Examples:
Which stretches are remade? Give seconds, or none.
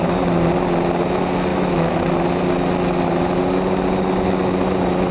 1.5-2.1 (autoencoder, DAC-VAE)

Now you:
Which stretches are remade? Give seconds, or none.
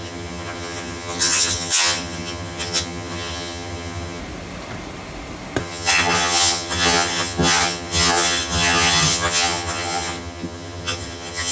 0.0-4.2 (vocoder, HiFi-GAN); 5.6-11.5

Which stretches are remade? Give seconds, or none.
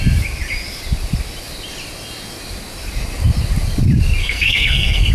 4.2-5.1 (codec, SNAC)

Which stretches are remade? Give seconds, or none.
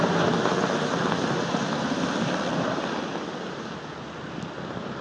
none